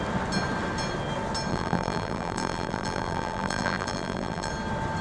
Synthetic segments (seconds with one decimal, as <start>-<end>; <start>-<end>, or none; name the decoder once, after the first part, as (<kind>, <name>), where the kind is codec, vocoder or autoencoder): 1.5-4.5 (vocoder, BigVGAN v2)

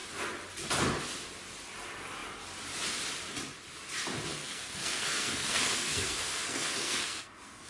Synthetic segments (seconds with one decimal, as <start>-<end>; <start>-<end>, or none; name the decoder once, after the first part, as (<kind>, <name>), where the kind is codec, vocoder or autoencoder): 4.3-7.7 (codec, SNAC)